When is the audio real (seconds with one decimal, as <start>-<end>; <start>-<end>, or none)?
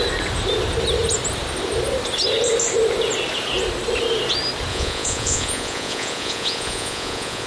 0.0-4.7